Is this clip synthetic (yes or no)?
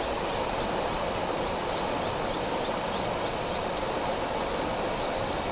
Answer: no